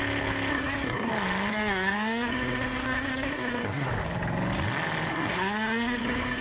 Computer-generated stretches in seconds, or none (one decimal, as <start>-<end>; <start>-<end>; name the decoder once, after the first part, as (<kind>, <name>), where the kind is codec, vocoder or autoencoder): 0.5-1.1 (codec, SNAC); 1.5-3.9; 5.1-6.4